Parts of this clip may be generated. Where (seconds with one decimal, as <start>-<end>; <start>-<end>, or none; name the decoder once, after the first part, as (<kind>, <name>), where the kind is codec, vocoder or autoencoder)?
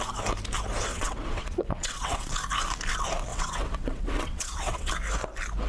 0.9-2.3 (vocoder, WaveNeXt); 3.3-4.9